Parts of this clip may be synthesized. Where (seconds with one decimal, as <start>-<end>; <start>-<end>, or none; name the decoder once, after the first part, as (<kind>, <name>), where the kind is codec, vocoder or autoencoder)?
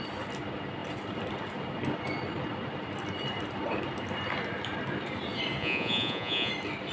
5.6-6.5 (vocoder, Vocos)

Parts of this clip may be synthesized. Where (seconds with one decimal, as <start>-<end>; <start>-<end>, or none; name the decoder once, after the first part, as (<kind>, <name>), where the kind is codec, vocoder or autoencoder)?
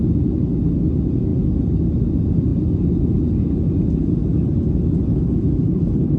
5.1-6.2 (codec, HILCodec)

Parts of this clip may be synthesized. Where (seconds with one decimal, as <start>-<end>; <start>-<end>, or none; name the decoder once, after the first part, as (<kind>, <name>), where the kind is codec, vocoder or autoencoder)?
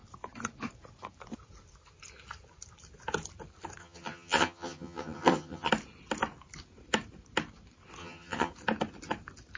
3.8-5.7 (vocoder, HiFi-GAN); 8.0-8.5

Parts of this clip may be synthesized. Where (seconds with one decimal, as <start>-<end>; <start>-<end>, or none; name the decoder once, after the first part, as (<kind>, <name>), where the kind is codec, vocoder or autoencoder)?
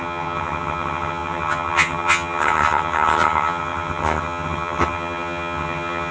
0.0-6.1 (vocoder, HiFi-GAN)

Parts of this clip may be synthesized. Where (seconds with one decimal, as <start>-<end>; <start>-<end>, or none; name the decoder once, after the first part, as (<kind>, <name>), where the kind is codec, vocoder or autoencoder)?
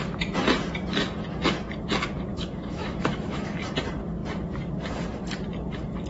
2.3-3.7 (autoencoder, DAC-VAE)